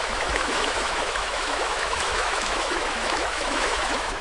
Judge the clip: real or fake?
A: fake